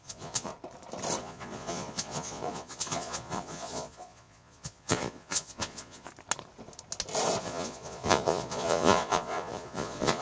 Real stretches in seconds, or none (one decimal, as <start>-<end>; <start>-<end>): 0.5-1.2; 6.1-7.4